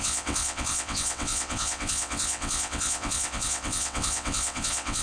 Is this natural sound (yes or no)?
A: no